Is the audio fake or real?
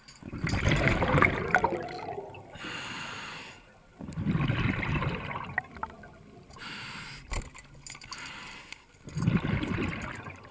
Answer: real